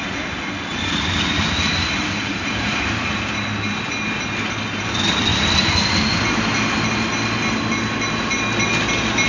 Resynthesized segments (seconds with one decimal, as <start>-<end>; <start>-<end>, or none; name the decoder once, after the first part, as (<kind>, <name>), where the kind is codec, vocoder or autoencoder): 0.7-3.8 (vocoder, BigVGAN v2); 5.3-5.9